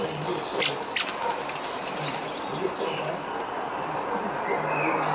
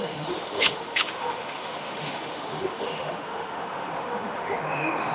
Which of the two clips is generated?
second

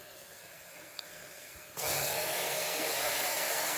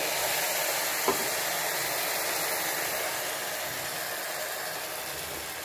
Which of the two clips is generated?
first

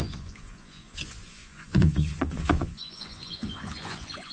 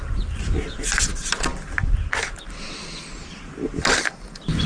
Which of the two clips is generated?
first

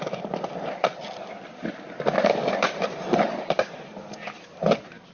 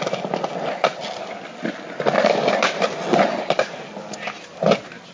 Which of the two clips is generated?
first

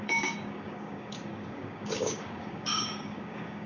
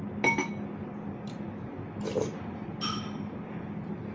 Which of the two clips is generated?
first